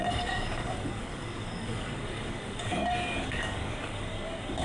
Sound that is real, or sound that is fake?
fake